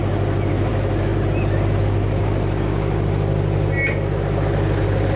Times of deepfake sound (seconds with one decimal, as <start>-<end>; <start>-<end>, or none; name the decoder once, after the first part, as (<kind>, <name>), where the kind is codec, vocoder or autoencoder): none